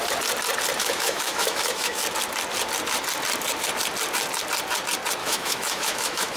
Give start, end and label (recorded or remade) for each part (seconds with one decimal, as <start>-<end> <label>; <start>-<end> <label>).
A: 0.0-0.8 recorded; 0.8-2.0 remade; 2.0-5.2 recorded; 5.2-6.4 remade